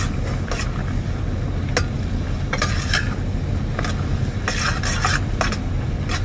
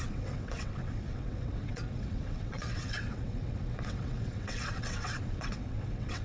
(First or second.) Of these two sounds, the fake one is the second